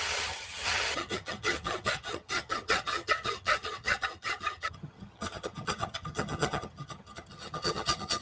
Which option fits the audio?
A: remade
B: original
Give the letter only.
A